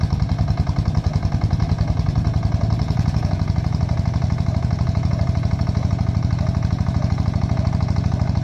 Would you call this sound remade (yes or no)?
no